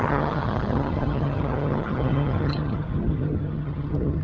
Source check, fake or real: fake